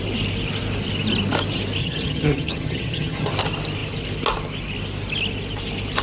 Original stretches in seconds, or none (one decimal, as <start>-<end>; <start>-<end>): 0.0-1.8; 3.3-6.0